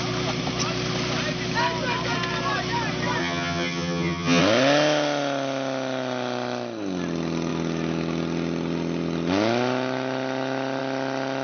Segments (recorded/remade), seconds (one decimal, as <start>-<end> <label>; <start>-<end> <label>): 0.0-3.2 recorded; 3.2-4.4 remade; 4.4-11.4 recorded

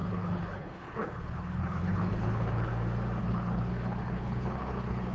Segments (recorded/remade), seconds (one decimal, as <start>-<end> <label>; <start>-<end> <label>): 0.0-2.7 remade; 2.7-3.2 recorded; 3.2-5.1 remade

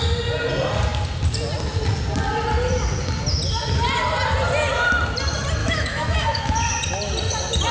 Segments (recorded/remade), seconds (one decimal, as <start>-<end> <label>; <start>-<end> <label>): 0.0-5.6 recorded; 5.6-6.5 remade; 6.5-7.7 recorded